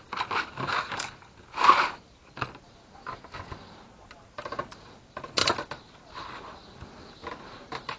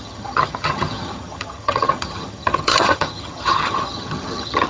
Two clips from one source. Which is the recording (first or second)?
first